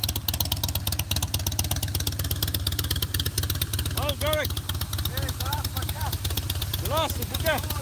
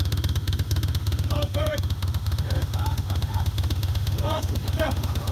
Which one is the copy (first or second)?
second